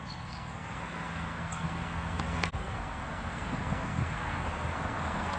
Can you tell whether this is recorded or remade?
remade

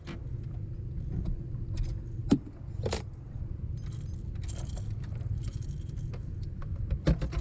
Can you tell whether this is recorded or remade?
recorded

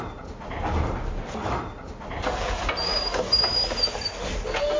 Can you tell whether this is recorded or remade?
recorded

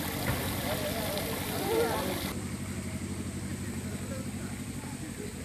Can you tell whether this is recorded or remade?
recorded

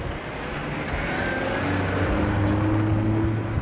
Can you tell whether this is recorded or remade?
recorded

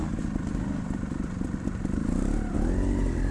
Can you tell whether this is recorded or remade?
recorded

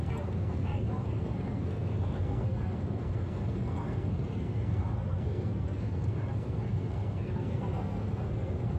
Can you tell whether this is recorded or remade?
remade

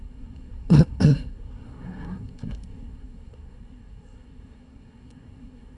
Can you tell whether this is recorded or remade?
remade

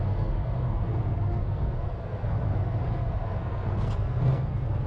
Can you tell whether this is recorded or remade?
remade